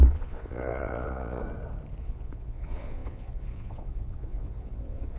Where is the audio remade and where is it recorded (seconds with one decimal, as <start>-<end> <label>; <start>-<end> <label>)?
0.0-1.4 remade; 1.4-2.0 recorded; 2.0-5.2 remade